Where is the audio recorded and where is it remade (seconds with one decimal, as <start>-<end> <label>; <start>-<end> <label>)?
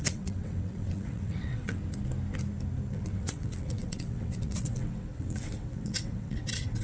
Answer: 0.0-1.8 remade; 1.8-2.9 recorded; 2.9-6.8 remade